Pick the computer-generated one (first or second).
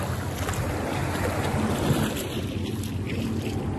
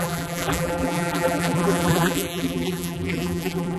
second